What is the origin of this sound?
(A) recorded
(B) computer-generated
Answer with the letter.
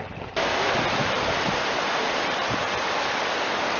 A